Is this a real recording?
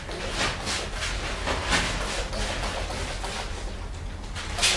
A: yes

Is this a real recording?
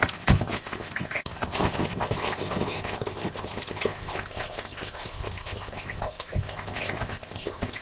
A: no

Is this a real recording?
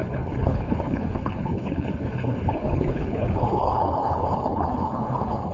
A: no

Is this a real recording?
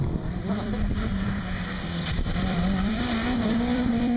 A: no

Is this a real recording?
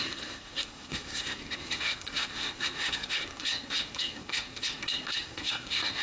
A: no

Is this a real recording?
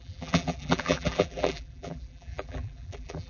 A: no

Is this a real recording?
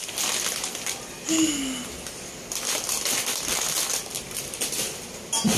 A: yes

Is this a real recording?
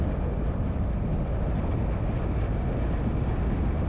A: yes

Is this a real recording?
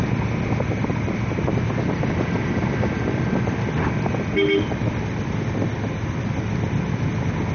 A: yes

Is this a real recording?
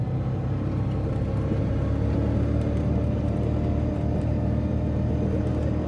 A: yes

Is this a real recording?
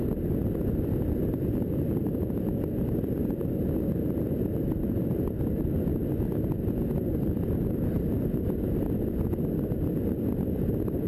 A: yes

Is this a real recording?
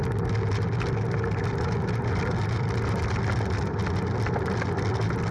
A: yes